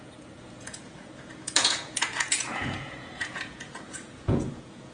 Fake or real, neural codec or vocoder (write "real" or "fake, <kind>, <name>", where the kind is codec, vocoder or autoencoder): fake, vocoder, Vocos